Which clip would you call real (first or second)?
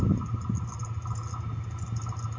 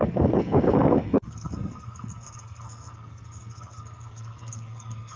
first